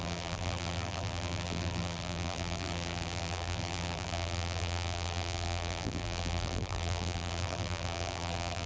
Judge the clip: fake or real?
fake